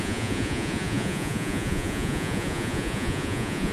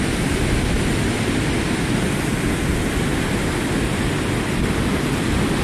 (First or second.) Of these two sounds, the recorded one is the second